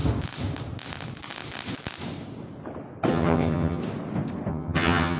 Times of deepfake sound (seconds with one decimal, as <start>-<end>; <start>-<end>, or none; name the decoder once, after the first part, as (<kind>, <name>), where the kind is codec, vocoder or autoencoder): 3.1-3.8 (vocoder, HiFi-GAN); 4.5-5.2